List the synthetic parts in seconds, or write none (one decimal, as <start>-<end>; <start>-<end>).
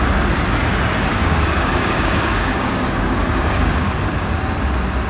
1.2-3.6